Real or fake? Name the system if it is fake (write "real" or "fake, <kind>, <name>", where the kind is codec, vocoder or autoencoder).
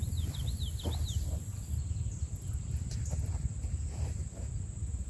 real